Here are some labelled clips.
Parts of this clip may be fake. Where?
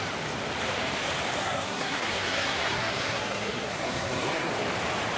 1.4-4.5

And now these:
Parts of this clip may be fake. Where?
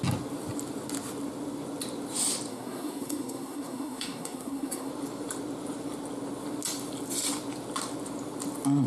2.5-4.9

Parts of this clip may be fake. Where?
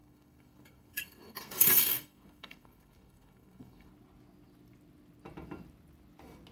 0.0-3.9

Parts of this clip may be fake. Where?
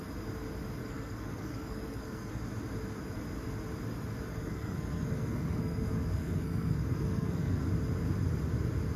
0.8-2.3; 4.3-7.6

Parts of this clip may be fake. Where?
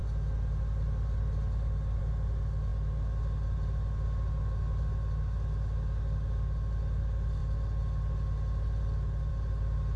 none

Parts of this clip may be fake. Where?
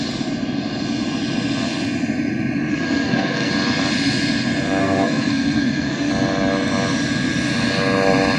2.7-3.5; 4.8-6.1